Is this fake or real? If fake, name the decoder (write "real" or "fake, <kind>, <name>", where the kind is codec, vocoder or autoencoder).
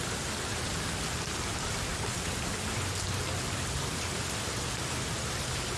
real